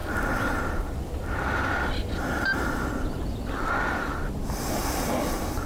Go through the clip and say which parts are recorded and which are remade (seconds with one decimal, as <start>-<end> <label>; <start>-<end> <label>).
0.0-0.9 recorded; 0.9-5.7 remade